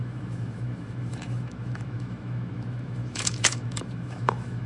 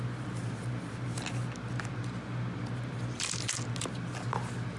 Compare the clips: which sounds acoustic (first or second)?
second